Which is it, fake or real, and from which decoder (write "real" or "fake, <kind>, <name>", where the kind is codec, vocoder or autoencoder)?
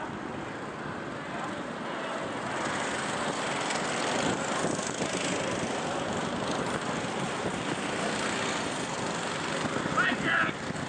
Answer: real